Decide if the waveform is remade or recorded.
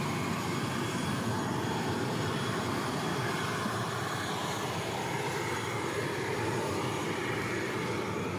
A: remade